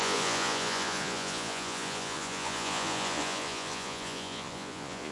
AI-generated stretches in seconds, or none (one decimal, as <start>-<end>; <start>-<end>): 0.0-5.1